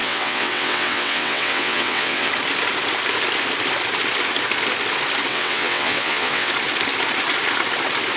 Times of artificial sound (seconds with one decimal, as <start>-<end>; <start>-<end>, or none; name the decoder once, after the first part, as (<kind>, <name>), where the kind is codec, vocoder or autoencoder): 0.0-2.3 (vocoder, WaveNeXt); 5.3-6.5